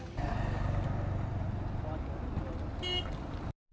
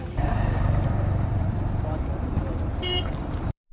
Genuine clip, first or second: first